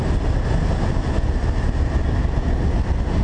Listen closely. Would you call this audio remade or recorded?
recorded